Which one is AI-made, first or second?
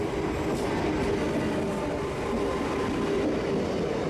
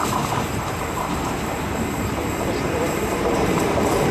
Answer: second